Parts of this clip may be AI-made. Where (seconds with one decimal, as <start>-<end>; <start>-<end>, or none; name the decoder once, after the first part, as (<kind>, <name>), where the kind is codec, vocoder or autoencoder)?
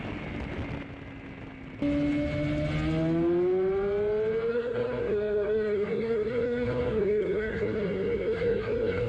4.5-9.1 (codec, SNAC)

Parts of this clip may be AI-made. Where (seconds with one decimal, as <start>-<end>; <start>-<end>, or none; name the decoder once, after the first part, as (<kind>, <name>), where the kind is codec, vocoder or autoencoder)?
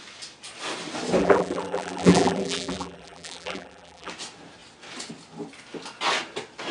1.2-4.1 (vocoder, BigVGAN v2)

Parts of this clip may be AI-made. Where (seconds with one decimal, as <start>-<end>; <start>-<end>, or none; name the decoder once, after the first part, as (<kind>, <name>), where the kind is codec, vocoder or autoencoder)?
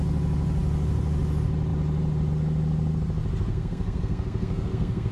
3.5-5.1 (codec, SNAC)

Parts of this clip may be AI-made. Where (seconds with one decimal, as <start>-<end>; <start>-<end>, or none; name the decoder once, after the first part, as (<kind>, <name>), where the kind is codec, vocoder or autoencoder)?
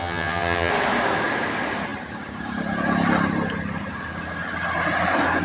0.0-0.7 (vocoder, HiFi-GAN)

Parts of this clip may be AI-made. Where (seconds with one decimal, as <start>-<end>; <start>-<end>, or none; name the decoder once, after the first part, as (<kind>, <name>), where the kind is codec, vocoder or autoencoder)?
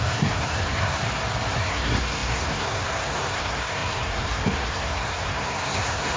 0.0-1.0 (codec, SNAC); 1.6-6.2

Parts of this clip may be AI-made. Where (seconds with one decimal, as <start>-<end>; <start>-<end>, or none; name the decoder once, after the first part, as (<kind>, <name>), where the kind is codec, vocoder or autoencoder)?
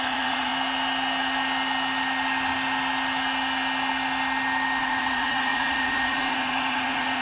0.0-0.5 (vocoder, Vocos); 4.8-7.2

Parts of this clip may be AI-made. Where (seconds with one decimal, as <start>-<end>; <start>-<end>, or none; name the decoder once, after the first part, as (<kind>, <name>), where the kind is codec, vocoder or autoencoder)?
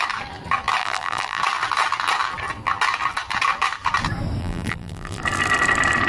0.8-1.4 (vocoder, BigVGAN v2); 4.4-5.2